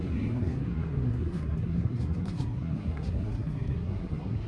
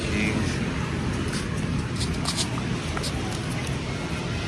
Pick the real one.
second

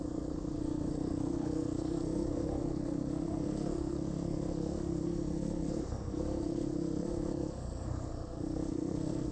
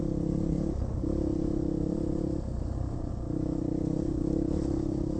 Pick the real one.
second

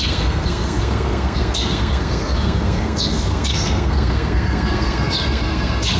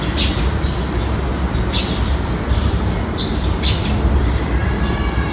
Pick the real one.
second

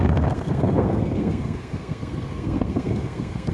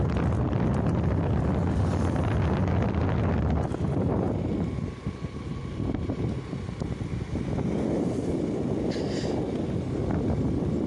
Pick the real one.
second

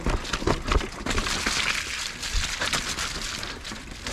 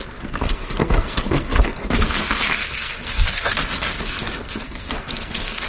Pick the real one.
first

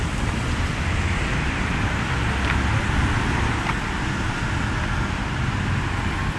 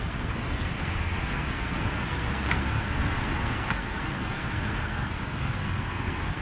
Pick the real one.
first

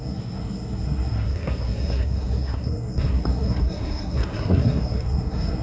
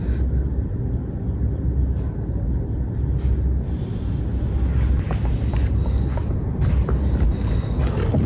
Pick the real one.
second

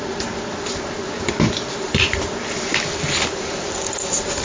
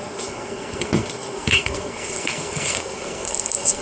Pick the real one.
first